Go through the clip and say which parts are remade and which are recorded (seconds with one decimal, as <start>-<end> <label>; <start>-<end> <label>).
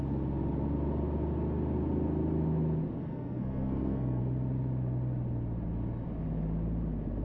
0.0-3.0 recorded; 3.0-4.2 remade; 4.2-7.2 recorded